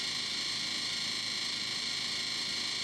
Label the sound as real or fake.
real